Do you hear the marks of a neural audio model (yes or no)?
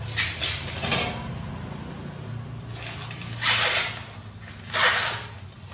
no